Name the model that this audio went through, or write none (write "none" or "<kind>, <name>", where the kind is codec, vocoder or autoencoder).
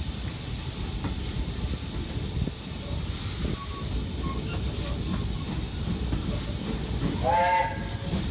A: none